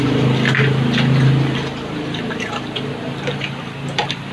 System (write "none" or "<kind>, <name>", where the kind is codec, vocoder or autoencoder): none